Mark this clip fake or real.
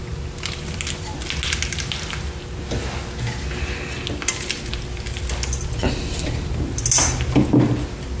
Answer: real